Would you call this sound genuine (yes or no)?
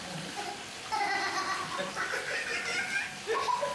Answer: yes